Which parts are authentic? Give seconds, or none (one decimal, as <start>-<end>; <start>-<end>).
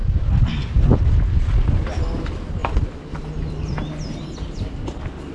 0.0-1.9; 2.6-5.3